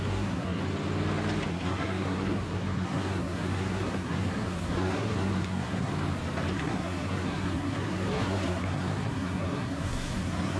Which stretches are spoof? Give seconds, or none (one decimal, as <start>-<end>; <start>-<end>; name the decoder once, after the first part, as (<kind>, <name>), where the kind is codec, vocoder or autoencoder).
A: 0.0-0.6 (codec, SNAC); 1.5-5.9; 6.5-10.6